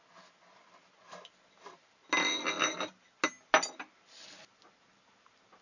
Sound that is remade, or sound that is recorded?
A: recorded